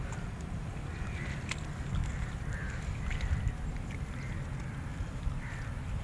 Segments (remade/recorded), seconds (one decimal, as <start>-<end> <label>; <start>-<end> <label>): 0.0-6.0 recorded